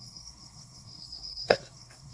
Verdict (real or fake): fake